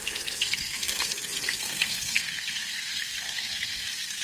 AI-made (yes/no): yes